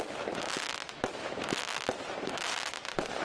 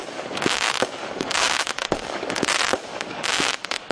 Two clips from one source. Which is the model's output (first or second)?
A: second